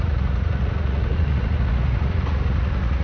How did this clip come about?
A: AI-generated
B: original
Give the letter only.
A